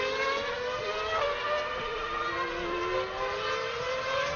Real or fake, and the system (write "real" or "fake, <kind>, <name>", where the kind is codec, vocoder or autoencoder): real